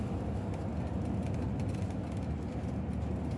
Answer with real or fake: real